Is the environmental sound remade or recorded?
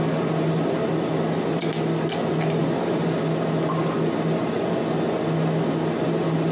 recorded